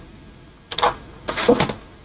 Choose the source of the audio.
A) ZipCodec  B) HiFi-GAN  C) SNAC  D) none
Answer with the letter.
D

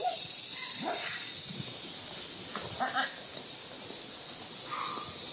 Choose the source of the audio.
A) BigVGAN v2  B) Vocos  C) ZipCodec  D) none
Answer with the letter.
D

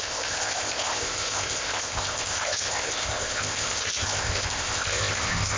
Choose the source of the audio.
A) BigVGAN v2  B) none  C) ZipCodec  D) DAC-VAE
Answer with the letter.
C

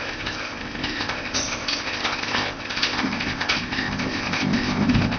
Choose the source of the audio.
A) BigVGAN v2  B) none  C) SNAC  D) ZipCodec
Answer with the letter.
D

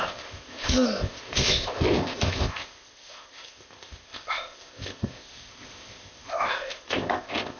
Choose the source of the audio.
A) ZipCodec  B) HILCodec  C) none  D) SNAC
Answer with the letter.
A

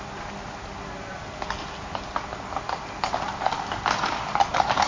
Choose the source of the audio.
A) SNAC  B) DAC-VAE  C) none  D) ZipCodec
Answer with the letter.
C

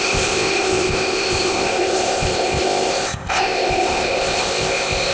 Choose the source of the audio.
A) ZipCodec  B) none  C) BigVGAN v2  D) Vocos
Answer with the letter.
A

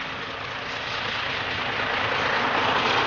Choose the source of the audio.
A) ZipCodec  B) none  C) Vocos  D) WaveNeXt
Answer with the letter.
B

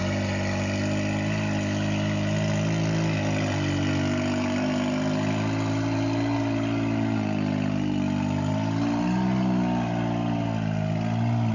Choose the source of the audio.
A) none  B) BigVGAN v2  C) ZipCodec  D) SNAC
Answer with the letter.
A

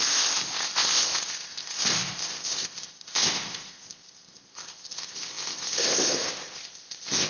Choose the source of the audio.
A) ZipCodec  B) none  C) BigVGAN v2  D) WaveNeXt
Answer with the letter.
A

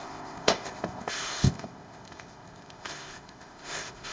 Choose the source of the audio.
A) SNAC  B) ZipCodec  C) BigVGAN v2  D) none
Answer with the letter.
B